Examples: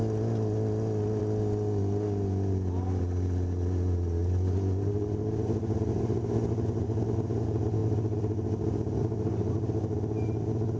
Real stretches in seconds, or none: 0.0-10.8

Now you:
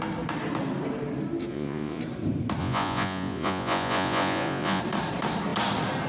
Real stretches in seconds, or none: 0.0-1.5; 2.0-2.6; 4.8-6.1

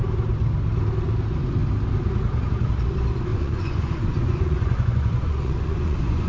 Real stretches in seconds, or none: 0.0-3.3